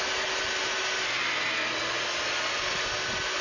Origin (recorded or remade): recorded